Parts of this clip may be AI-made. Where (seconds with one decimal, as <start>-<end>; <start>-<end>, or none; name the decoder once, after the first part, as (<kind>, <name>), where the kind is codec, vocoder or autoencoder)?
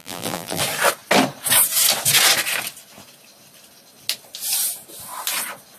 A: 0.0-0.6 (vocoder, BigVGAN v2)